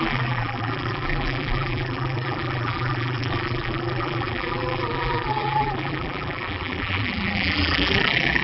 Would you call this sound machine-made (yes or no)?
yes